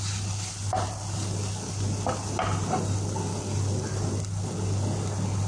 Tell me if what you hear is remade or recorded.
recorded